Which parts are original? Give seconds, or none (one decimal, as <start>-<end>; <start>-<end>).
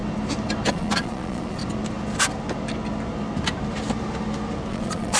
0.0-0.7; 1.6-4.7